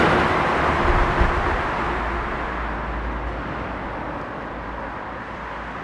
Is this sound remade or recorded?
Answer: recorded